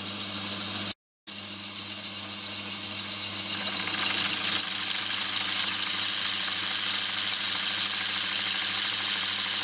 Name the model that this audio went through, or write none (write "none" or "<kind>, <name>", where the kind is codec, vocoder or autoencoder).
none